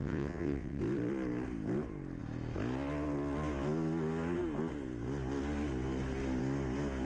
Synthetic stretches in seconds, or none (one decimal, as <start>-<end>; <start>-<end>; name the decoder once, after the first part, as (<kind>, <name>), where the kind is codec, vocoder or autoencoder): 0.0-0.8 (vocoder, WaveNeXt)